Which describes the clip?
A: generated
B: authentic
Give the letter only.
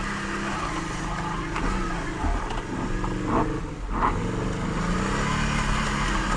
B